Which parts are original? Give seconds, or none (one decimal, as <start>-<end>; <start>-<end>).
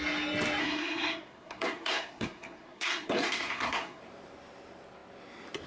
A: 0.0-0.6; 4.0-5.7